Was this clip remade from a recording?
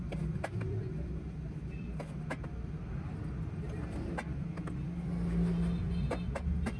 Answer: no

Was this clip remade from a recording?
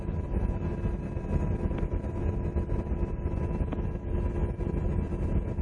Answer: no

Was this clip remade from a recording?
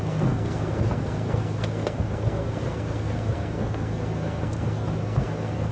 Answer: yes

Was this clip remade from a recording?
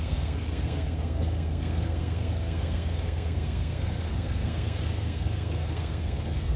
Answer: yes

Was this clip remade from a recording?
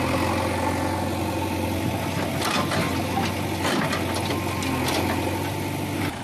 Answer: no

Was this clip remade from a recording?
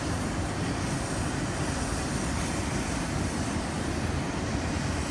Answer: no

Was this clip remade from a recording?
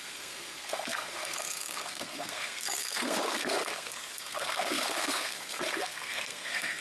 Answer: yes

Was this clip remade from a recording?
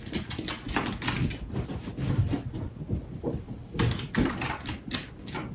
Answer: no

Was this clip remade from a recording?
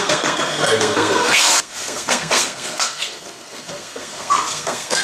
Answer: yes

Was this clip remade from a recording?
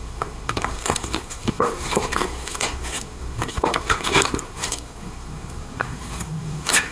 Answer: yes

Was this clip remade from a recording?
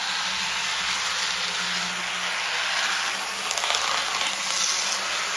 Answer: no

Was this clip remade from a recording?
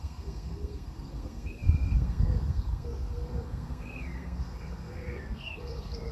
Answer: yes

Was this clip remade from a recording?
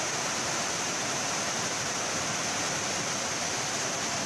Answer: no